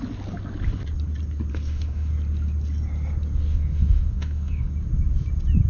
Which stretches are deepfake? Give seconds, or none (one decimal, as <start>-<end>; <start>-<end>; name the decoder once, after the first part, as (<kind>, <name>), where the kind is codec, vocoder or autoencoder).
1.5-2.1 (autoencoder, DAC-VAE); 3.5-4.7